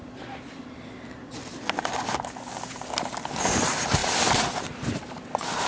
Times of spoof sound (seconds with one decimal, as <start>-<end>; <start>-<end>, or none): 0.0-3.4; 4.0-4.6